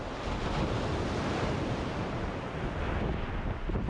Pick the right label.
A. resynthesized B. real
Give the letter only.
B